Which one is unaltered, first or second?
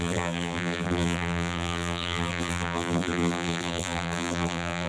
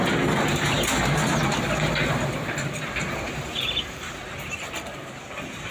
second